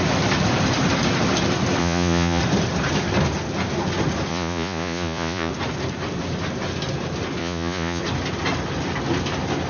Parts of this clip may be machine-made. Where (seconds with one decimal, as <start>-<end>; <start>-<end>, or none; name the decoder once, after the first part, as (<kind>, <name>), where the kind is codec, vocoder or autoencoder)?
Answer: 1.8-2.4 (vocoder, Vocos); 4.3-5.5; 7.4-8.0